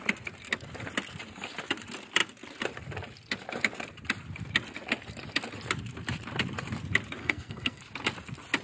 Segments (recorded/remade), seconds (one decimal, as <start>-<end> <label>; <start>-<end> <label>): 0.0-7.2 recorded; 7.2-7.8 remade; 7.8-8.6 recorded